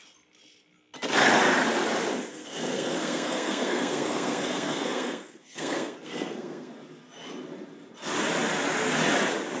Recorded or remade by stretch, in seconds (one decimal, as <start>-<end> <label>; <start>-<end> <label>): 0.0-2.3 recorded; 2.3-6.7 remade; 6.7-9.6 recorded

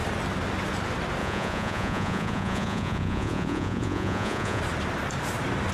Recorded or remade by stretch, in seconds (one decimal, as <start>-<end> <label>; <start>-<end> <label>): 0.0-1.2 recorded; 1.2-4.6 remade; 4.6-5.7 recorded